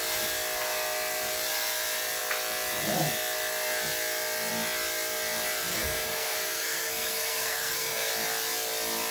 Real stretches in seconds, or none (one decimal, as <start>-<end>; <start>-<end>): 0.0-5.7; 8.1-9.1